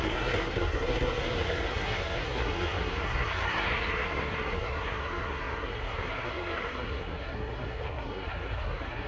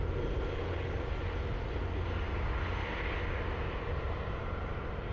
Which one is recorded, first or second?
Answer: second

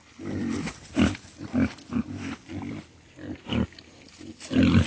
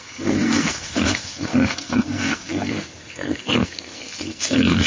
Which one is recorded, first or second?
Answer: first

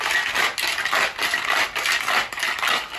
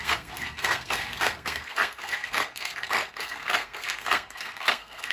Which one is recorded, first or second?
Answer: first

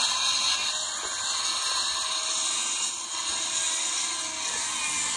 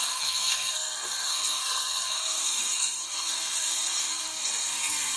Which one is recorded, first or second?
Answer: first